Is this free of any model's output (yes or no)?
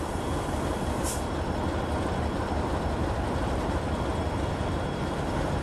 yes